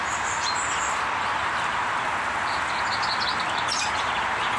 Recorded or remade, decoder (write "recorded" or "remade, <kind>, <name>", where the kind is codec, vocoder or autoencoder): recorded